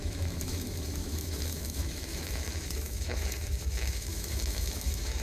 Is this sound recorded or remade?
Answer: remade